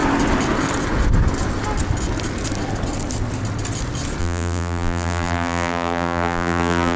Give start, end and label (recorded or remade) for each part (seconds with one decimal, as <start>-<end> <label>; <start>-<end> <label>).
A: 0.0-4.2 recorded; 4.2-7.0 remade